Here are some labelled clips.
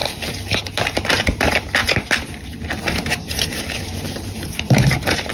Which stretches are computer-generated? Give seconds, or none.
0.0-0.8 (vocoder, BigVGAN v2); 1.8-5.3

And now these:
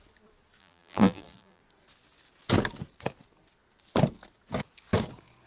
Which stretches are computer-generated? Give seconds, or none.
0.6-1.6 (vocoder, BigVGAN v2)

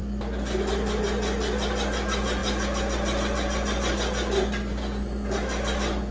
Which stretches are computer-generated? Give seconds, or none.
none

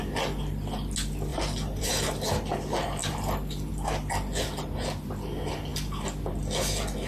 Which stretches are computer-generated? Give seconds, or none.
1.3-1.9 (vocoder, BigVGAN v2); 3.0-3.7

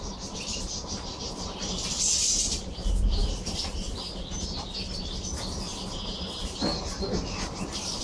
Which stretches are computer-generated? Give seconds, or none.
0.0-5.3 (vocoder, BigVGAN v2)

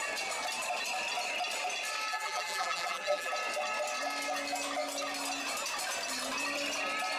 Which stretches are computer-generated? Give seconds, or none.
2.1-3.3 (vocoder, BigVGAN v2)